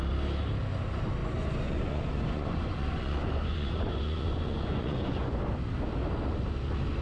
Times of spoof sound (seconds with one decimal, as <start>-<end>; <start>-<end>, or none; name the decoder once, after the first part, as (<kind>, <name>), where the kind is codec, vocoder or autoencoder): 1.2-5.4 (vocoder, Vocos)